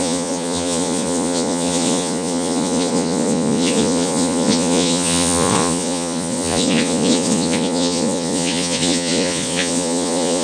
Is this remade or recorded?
remade